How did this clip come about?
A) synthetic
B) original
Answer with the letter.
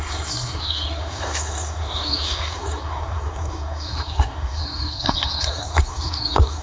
A